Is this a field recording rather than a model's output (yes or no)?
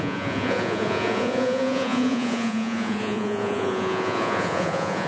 no